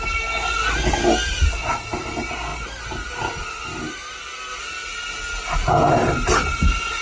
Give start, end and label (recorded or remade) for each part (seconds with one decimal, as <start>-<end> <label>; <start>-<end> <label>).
0.0-7.0 recorded

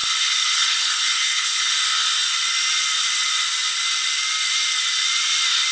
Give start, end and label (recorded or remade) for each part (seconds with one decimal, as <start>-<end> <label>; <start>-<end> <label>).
0.0-1.7 remade; 1.7-5.7 recorded

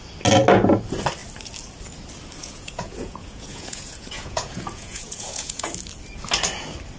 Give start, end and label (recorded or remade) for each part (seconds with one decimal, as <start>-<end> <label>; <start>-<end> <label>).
0.0-2.4 recorded; 2.4-5.7 remade; 5.7-7.0 recorded

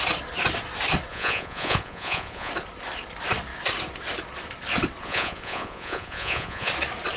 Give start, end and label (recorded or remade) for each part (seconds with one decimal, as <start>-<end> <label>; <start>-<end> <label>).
0.0-1.1 recorded; 1.1-2.5 remade; 2.5-5.0 recorded; 5.0-6.7 remade; 6.7-7.2 recorded